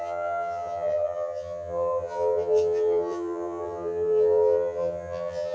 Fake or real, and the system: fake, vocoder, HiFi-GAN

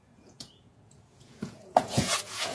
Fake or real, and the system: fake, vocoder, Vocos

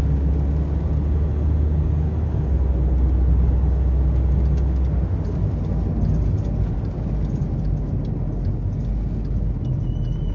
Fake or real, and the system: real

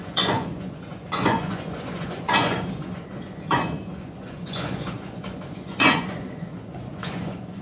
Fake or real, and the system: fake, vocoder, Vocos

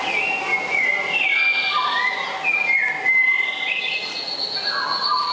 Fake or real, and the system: real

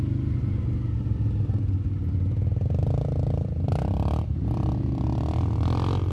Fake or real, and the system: real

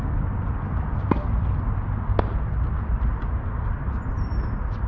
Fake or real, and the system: real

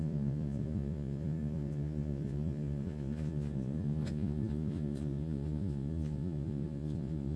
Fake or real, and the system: fake, vocoder, Vocos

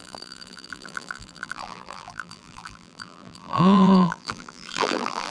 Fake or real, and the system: fake, vocoder, BigVGAN v2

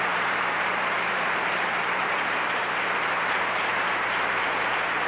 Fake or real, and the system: fake, vocoder, BigVGAN v2